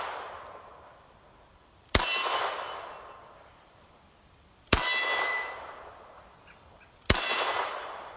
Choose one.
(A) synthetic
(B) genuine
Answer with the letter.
A